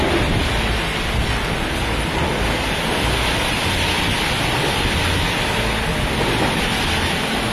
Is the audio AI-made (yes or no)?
no